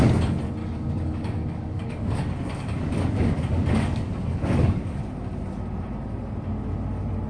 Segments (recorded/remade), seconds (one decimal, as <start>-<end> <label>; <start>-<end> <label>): 0.0-0.6 recorded; 0.6-5.0 remade; 5.0-7.3 recorded